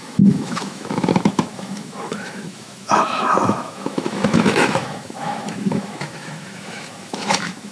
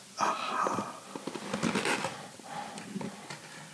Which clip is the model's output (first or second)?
first